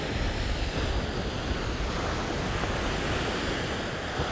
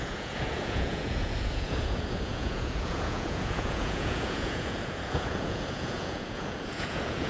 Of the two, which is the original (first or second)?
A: first